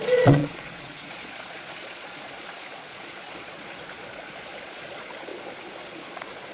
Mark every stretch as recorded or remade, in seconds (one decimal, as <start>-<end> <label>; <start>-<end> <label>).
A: 0.0-5.3 remade; 5.3-5.8 recorded; 5.8-6.5 remade